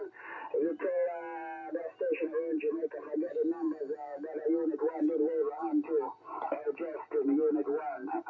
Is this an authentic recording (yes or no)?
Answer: yes